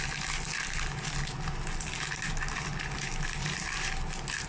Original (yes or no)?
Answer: yes